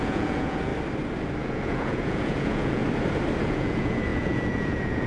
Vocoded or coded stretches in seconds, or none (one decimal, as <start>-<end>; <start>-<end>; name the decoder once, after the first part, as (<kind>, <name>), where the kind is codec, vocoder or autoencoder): 0.0-0.7 (vocoder, Vocos); 1.4-2.8; 3.4-5.1